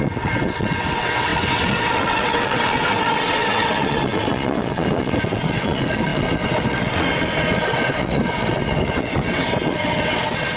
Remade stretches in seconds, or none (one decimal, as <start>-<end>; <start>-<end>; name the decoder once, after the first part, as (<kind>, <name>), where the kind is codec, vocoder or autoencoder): 0.0-10.6 (vocoder, WaveNeXt)